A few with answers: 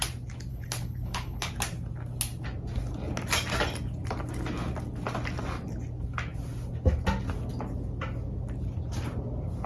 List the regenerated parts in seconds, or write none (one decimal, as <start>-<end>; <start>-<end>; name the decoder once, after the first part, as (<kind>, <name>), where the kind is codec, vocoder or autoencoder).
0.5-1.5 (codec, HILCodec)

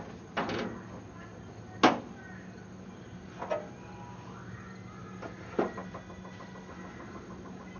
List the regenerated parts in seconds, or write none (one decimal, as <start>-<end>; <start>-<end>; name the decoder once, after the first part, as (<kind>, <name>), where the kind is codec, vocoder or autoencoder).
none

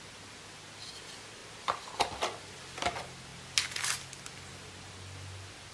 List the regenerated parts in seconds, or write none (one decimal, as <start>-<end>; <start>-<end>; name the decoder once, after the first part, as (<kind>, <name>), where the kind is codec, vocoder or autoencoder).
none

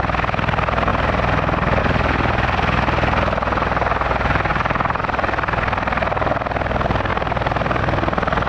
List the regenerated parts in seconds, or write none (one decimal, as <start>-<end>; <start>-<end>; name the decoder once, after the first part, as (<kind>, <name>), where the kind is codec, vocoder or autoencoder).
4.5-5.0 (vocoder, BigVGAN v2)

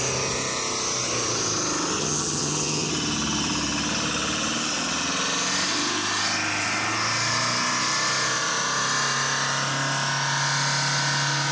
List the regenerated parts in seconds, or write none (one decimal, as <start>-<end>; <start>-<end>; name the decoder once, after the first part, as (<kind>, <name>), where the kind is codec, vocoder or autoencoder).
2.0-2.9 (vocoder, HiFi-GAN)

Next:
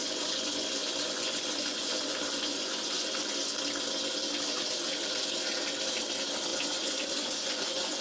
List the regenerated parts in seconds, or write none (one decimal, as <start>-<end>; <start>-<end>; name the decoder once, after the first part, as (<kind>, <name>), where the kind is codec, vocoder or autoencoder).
0.0-3.5 (vocoder, Vocos); 6.5-8.0

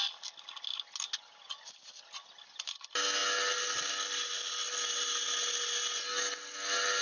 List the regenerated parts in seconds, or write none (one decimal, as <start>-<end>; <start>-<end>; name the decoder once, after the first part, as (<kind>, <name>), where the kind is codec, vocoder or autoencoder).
none